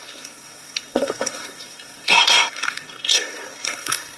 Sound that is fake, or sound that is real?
fake